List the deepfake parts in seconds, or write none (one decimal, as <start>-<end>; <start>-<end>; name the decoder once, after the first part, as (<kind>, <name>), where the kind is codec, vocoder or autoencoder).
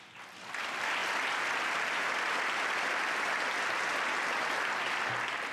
none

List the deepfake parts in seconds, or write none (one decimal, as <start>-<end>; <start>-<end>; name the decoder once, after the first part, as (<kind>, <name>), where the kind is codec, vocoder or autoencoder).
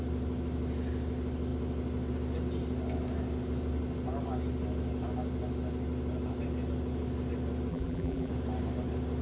7.7-8.3 (vocoder, BigVGAN v2)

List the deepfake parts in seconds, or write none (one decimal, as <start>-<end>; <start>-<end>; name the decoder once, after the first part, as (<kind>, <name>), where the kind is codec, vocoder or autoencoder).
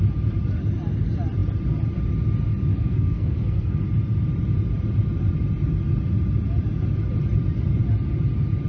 2.7-3.8 (codec, SNAC)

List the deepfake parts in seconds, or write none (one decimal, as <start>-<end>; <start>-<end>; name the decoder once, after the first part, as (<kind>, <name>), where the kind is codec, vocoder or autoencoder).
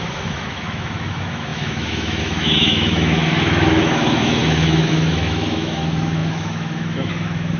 0.0-7.6 (autoencoder, DAC-VAE)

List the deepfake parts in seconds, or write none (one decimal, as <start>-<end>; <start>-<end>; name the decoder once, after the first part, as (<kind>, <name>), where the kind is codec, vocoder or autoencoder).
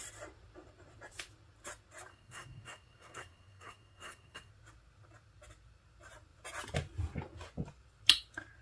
2.1-4.5 (codec, SNAC)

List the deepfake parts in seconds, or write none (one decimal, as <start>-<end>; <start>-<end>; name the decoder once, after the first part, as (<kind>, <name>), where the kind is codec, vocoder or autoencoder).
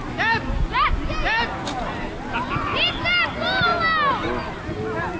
none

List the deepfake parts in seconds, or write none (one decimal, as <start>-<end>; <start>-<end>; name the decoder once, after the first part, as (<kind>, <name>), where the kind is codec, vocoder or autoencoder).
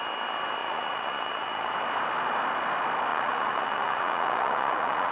0.6-1.7 (vocoder, Vocos); 3.1-5.1